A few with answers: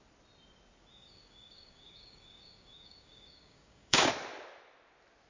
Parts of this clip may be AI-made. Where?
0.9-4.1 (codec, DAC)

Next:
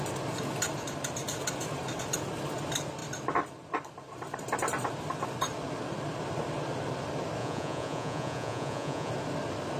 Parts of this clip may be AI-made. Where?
7.4-9.1 (vocoder, Vocos)

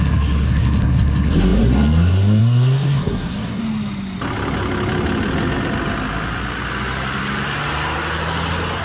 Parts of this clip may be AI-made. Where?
0.0-3.6 (codec, SNAC)

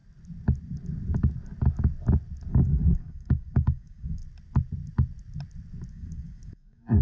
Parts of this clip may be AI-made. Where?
2.5-4.2 (codec, DAC); 5.9-7.0